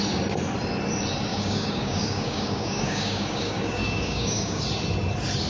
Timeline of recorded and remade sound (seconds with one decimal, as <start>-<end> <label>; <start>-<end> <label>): 0.0-1.3 recorded; 1.3-4.6 remade; 4.6-5.5 recorded